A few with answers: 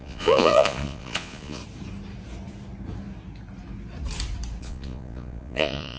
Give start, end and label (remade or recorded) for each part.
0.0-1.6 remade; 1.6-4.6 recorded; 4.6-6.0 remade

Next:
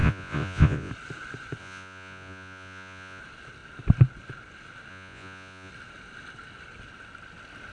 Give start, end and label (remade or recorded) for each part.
0.0-0.9 remade; 0.9-1.6 recorded; 1.6-3.2 remade; 3.2-4.9 recorded; 4.9-5.7 remade; 5.7-7.7 recorded

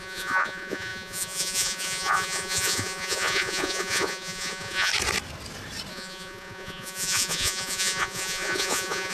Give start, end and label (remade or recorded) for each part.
0.0-4.9 remade; 4.9-5.9 recorded; 5.9-9.1 remade